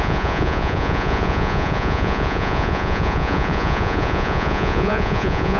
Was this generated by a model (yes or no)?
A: yes